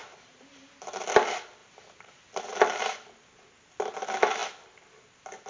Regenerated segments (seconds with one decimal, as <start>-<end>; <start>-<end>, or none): 0.0-1.0; 1.6-2.4